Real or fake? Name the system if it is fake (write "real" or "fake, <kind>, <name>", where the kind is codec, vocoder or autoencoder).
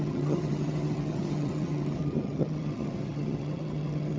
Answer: fake, vocoder, HiFi-GAN